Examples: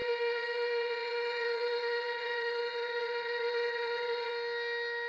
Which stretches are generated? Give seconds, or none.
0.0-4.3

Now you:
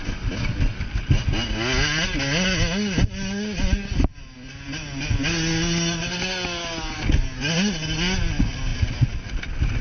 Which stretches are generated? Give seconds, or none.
none

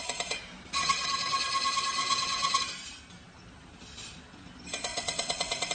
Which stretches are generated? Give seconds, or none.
0.8-1.3; 2.0-2.6; 4.9-5.7